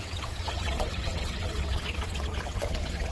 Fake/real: fake